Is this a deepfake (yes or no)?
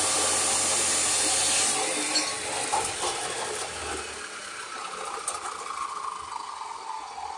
no